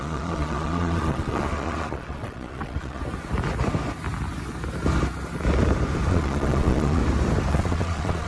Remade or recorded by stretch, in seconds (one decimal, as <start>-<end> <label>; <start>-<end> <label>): 0.0-3.0 remade; 3.0-6.1 recorded; 6.1-7.0 remade; 7.0-7.5 recorded; 7.5-8.3 remade